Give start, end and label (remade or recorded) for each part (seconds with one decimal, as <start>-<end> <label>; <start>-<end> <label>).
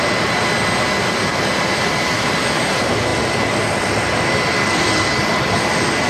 0.0-4.6 recorded; 4.6-5.3 remade; 5.3-6.1 recorded